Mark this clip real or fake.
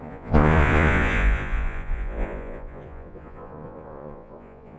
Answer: fake